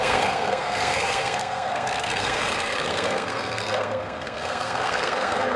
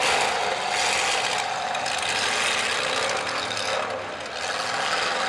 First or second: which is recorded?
second